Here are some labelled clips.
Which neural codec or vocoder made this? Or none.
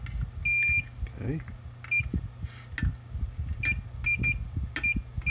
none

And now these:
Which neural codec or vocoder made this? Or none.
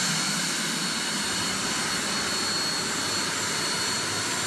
none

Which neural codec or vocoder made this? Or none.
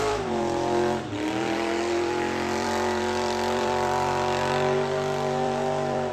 vocoder, BigVGAN v2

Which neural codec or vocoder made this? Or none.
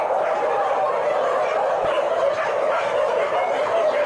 none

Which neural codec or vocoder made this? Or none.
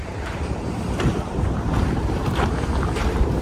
vocoder, BigVGAN v2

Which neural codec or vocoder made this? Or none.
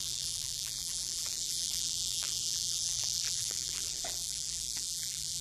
vocoder, BigVGAN v2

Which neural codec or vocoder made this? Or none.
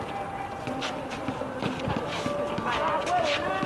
none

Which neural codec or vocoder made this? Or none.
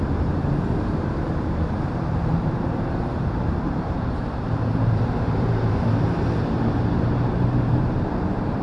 vocoder, BigVGAN v2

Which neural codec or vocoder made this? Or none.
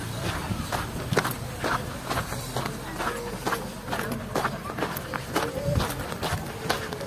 none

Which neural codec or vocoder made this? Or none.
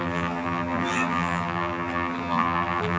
vocoder, BigVGAN v2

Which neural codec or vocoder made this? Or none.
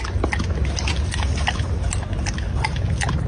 none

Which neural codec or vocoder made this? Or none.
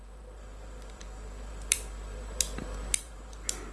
vocoder, BigVGAN v2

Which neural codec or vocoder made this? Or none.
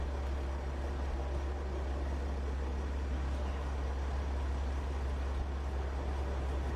none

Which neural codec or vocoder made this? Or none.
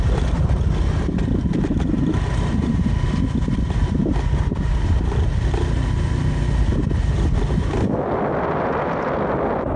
none